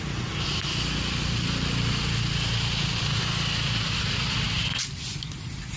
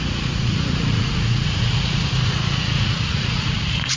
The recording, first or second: first